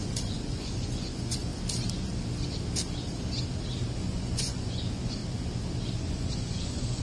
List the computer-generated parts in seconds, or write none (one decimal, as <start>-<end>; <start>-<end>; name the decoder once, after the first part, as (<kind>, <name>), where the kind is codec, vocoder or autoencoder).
0.0-1.5 (vocoder, Vocos); 4.0-5.2; 5.9-7.0